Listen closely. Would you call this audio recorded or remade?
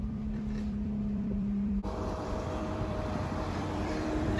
remade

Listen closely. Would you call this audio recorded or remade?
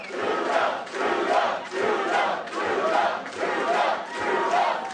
remade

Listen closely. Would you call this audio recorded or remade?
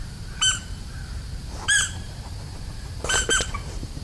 remade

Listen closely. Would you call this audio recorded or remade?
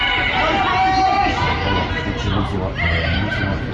recorded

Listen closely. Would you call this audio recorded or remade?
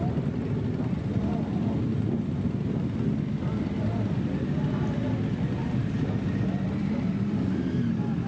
recorded